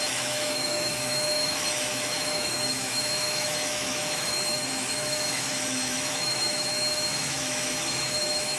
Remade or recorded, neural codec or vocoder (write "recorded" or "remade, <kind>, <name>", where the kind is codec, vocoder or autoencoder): remade, autoencoder, DAC-VAE